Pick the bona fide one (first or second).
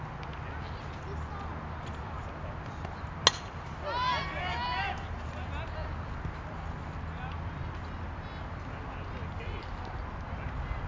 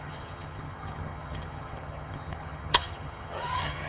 first